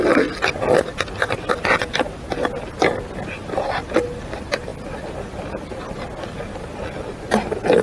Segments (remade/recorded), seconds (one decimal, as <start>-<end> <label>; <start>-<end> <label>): 0.0-7.8 recorded